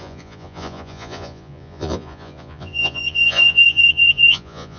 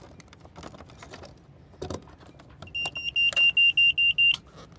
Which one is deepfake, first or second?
first